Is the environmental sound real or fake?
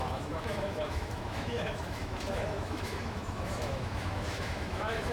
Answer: fake